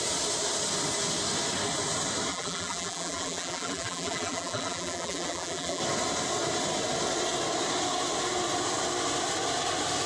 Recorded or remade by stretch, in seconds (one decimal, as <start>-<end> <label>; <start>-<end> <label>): 0.0-2.3 recorded; 2.3-5.8 remade; 5.8-10.1 recorded